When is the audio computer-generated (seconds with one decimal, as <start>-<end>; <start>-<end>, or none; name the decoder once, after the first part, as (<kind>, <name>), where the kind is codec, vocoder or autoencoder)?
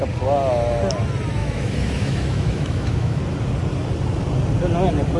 1.4-3.2 (autoencoder, DAC-VAE)